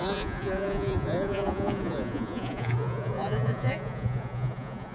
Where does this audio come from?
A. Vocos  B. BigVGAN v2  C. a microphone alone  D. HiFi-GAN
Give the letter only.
A